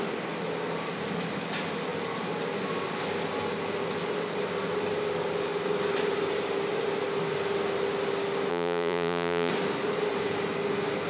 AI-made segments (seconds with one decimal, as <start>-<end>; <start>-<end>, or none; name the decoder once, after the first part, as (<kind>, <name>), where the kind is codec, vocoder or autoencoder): 8.5-9.5 (vocoder, Vocos)